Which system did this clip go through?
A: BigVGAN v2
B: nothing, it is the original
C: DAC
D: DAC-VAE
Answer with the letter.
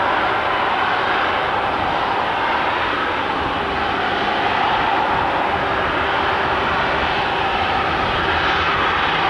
B